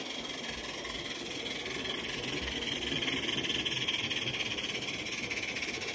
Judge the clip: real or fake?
real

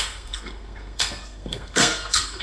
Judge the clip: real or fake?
fake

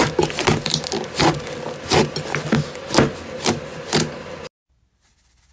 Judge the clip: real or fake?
real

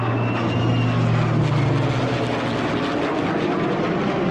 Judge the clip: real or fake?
real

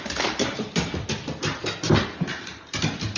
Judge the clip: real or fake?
real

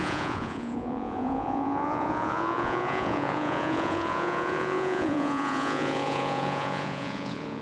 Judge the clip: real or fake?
fake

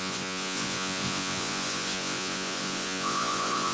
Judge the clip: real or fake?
fake